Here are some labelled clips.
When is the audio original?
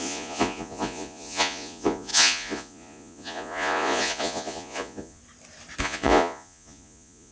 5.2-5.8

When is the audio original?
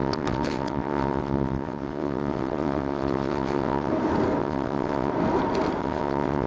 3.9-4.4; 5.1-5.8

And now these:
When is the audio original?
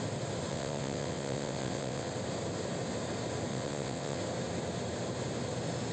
0.0-0.5; 2.1-3.5; 4.2-5.9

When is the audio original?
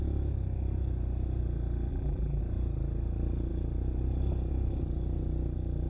0.0-1.9; 2.4-5.9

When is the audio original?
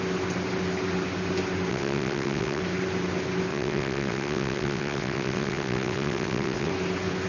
0.0-1.7; 2.6-3.5; 6.7-7.3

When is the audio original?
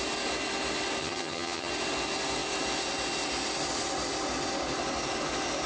0.0-1.0; 1.7-5.7